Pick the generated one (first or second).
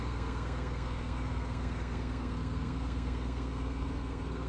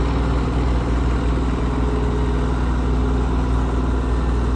first